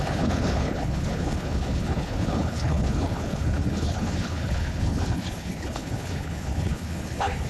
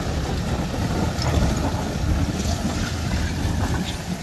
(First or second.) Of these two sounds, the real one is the second